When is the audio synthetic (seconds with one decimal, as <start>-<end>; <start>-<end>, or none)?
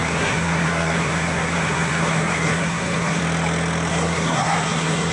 0.0-3.2; 3.9-5.1